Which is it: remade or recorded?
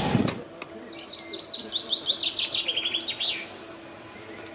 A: recorded